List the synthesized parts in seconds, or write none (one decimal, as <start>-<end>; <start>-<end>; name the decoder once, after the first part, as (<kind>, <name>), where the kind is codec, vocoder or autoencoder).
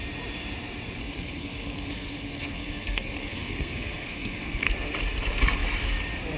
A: 1.0-4.7 (codec, SNAC)